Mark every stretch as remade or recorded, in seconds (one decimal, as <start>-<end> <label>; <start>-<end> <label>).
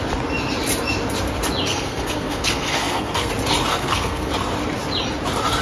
0.0-1.7 recorded; 1.7-3.3 remade; 3.3-3.7 recorded; 3.7-4.3 remade; 4.3-5.6 recorded